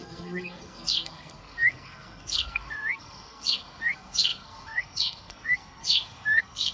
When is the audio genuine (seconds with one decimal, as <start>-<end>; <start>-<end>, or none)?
none